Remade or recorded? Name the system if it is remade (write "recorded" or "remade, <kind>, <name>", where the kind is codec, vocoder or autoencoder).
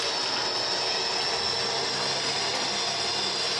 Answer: recorded